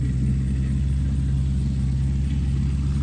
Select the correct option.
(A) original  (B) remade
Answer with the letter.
A